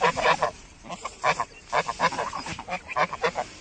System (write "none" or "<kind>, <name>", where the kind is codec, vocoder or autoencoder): vocoder, BigVGAN v2